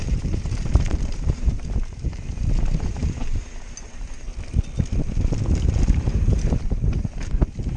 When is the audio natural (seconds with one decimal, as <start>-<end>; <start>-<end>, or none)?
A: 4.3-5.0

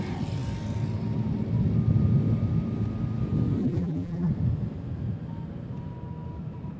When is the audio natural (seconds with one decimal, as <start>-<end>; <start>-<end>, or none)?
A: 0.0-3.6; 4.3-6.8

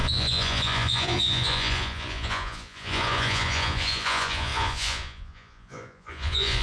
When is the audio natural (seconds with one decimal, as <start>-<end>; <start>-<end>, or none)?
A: none